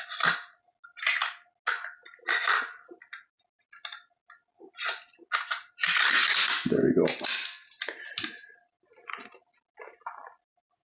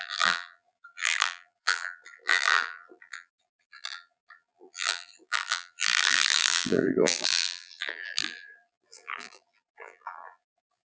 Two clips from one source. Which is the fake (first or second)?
second